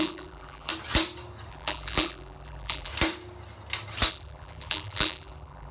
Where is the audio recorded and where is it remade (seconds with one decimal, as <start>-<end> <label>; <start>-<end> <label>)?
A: 0.0-0.7 remade; 0.7-1.5 recorded; 1.5-2.9 remade; 2.9-4.1 recorded; 4.1-5.7 remade